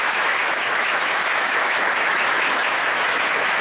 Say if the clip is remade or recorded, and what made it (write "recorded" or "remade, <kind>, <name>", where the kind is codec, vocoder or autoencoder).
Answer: remade, autoencoder, DAC-VAE